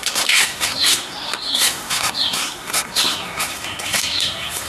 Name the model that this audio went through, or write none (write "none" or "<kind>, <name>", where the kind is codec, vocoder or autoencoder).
codec, SNAC